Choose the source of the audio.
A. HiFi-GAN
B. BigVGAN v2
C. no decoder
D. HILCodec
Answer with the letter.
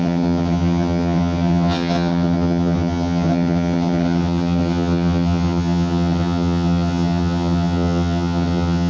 A